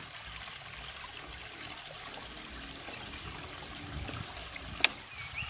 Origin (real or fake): real